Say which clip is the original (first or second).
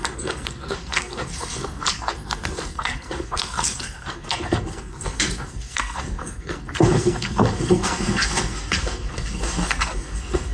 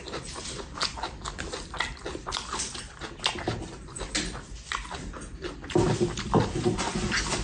second